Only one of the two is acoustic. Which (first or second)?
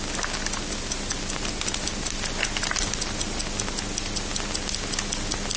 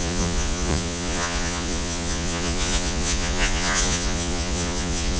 first